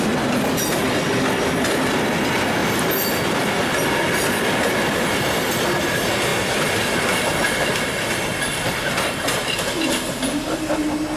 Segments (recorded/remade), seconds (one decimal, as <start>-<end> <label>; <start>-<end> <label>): 0.0-2.6 recorded; 2.6-4.7 remade; 4.7-6.3 recorded; 6.3-9.0 remade; 9.0-11.2 recorded